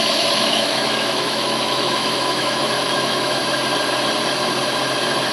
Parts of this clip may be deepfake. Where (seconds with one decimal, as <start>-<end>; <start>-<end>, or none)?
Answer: 0.0-3.4